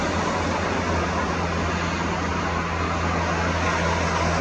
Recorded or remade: recorded